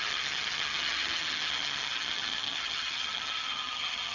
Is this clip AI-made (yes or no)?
yes